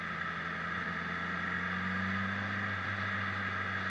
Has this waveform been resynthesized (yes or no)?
no